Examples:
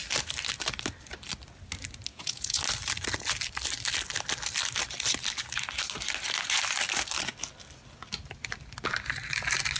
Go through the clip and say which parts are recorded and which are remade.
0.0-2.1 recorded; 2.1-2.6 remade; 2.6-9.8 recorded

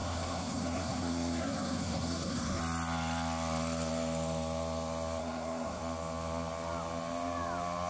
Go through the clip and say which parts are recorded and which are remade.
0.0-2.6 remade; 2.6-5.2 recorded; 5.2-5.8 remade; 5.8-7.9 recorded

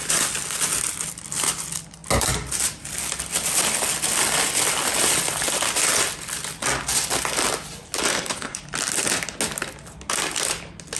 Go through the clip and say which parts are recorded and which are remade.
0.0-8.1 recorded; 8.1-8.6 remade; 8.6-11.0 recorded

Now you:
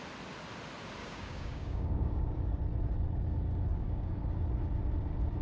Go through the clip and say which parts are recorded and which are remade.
0.0-1.0 recorded; 1.0-2.4 remade; 2.4-3.7 recorded; 3.7-4.3 remade; 4.3-5.4 recorded

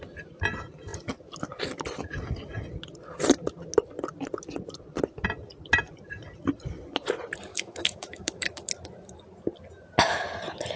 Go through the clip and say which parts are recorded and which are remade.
0.0-7.5 recorded; 7.5-8.7 remade; 8.7-10.8 recorded